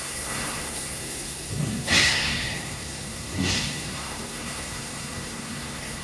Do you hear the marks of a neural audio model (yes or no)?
yes